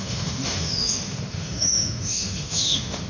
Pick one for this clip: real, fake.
fake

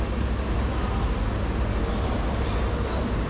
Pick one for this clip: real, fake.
real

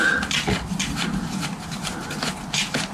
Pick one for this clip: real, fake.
real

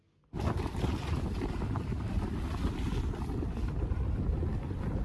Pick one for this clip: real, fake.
real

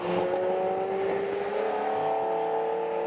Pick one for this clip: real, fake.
real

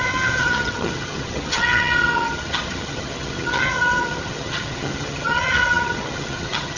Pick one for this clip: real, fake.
fake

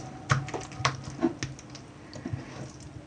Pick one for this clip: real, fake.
real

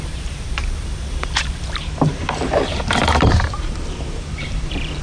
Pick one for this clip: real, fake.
fake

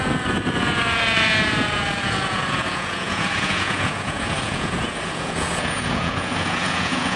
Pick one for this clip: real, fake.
fake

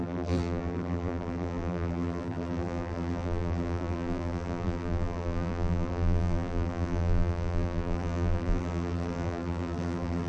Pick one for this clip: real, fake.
fake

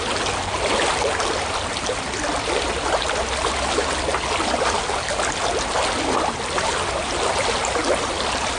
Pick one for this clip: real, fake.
real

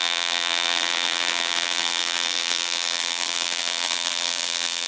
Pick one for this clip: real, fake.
fake